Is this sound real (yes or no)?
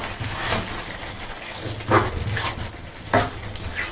yes